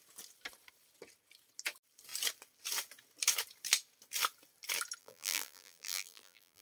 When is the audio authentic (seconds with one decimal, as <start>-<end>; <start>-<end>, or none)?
0.0-5.0